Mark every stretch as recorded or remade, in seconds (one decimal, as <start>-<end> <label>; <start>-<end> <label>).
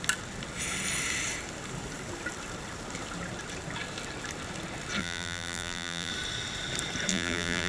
0.0-5.0 recorded; 5.0-6.1 remade; 6.1-7.1 recorded; 7.1-7.7 remade